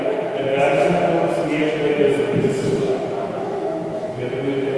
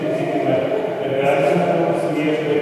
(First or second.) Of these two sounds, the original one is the second